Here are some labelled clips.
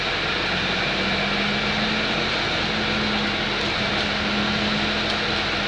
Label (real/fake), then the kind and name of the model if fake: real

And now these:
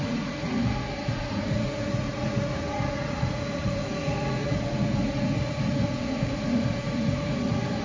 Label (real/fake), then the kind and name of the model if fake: fake, vocoder, Vocos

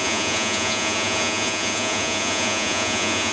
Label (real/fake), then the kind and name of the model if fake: fake, vocoder, Vocos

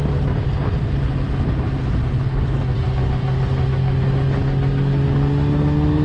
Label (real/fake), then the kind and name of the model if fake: real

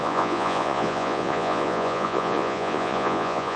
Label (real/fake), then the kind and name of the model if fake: fake, vocoder, Vocos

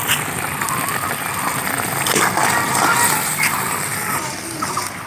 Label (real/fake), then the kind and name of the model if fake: real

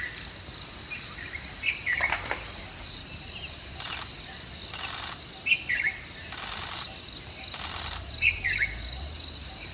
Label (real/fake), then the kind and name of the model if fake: real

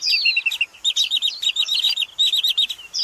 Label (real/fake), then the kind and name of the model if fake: real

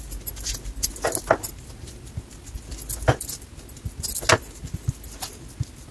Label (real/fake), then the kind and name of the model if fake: real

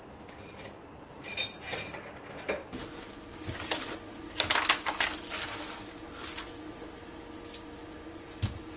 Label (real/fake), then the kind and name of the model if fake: real